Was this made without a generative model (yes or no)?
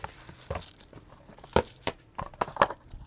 no